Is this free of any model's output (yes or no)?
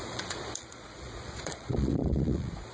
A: no